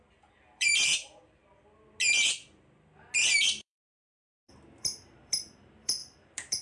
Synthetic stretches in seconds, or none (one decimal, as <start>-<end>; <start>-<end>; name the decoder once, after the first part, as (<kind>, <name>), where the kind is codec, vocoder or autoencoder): 0.0-1.4 (vocoder, BigVGAN v2); 3.4-6.6